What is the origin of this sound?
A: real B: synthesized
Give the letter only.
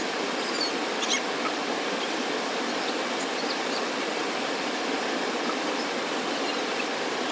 A